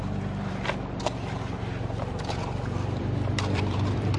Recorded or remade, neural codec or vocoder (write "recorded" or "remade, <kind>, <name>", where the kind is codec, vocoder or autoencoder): remade, vocoder, BigVGAN v2